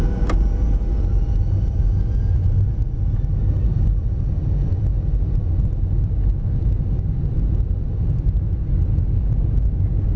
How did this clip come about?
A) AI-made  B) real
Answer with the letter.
B